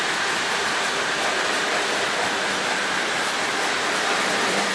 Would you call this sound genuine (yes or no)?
no